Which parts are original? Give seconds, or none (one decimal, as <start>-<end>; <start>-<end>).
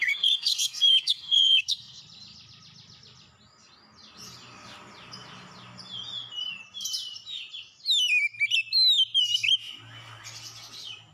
2.0-11.1